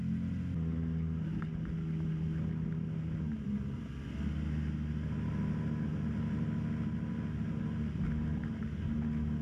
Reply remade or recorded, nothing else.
recorded